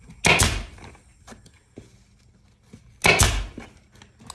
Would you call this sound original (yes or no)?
yes